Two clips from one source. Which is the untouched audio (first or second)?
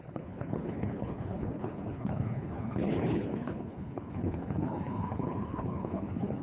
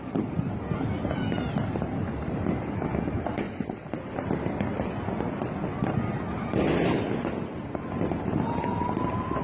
second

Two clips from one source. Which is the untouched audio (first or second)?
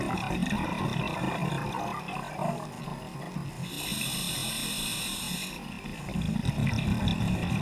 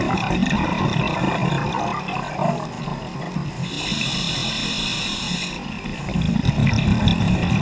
first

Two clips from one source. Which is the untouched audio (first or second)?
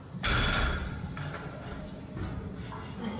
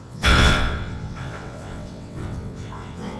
first